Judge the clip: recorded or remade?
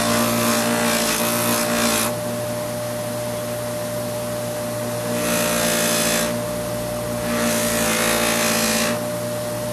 recorded